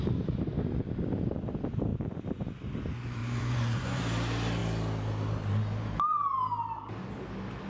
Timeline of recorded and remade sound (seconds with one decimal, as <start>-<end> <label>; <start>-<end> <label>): 0.0-3.2 recorded; 3.2-4.0 remade; 4.0-7.7 recorded